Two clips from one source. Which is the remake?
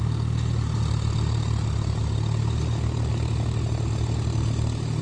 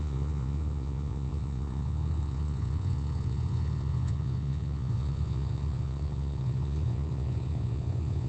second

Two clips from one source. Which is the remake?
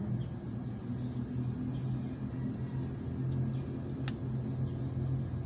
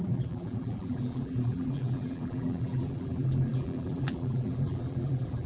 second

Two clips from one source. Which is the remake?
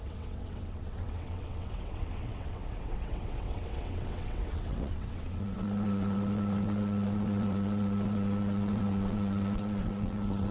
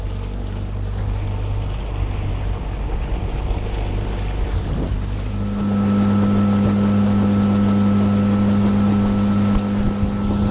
first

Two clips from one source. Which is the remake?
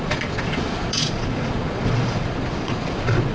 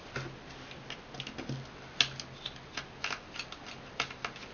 first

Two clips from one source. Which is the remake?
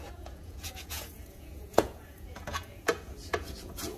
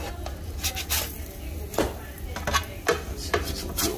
first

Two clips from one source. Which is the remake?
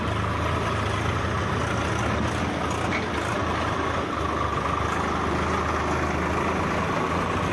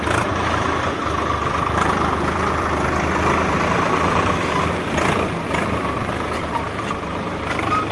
second